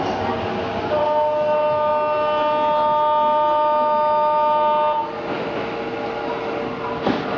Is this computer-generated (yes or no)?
no